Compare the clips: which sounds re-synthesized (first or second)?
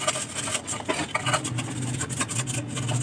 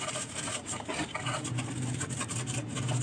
second